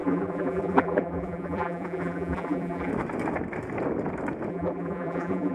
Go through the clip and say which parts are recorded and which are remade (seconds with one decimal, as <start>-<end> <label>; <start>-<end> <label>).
0.0-2.9 remade; 2.9-4.5 recorded; 4.5-5.5 remade